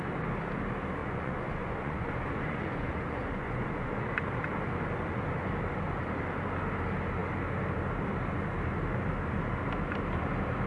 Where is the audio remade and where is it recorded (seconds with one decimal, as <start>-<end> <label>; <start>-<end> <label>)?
0.0-1.0 recorded; 1.0-4.1 remade; 4.1-10.7 recorded